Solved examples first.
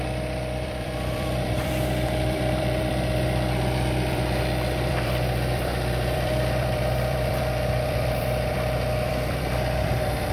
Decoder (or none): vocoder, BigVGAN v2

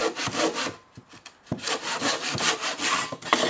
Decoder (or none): none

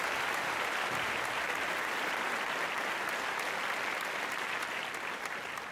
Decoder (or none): vocoder, BigVGAN v2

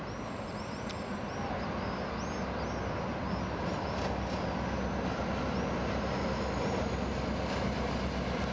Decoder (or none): none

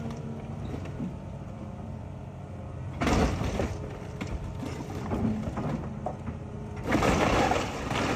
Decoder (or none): vocoder, BigVGAN v2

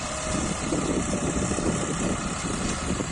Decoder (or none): vocoder, BigVGAN v2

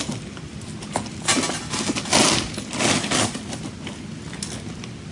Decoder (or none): none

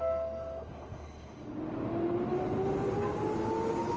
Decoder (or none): none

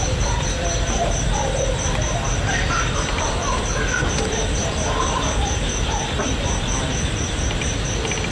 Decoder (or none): vocoder, BigVGAN v2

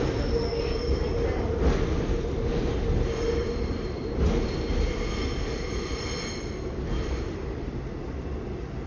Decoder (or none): none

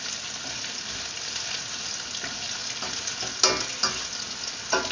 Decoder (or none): none